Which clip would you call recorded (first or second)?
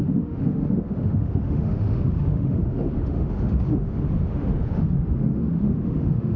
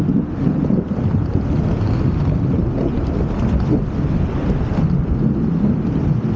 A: second